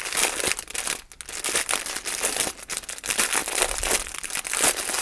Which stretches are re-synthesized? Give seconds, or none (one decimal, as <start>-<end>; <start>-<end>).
none